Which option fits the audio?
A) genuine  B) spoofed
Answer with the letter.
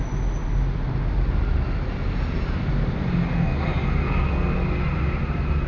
A